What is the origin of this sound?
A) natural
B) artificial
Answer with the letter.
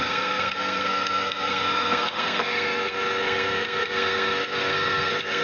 B